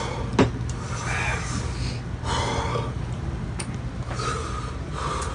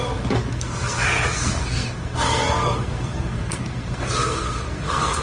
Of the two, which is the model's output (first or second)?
second